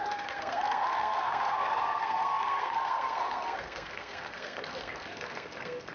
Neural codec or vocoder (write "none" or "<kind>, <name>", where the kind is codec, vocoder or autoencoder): codec, SNAC